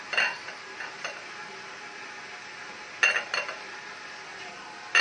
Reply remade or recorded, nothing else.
recorded